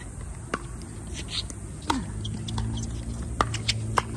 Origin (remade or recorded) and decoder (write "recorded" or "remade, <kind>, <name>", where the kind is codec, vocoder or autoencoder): recorded